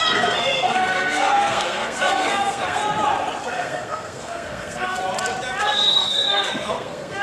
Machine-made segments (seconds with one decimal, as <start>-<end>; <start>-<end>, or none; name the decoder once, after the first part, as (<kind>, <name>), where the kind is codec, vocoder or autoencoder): 0.0-2.8 (codec, SNAC); 3.4-5.0; 5.6-7.2